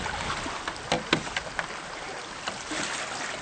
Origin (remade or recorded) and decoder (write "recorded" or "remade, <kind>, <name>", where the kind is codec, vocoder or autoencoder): recorded